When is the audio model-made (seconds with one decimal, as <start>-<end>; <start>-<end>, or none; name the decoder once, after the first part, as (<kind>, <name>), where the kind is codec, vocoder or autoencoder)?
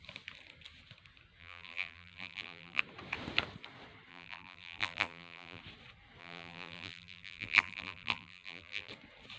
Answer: 1.4-2.8 (vocoder, BigVGAN v2); 4.1-5.6; 6.2-8.9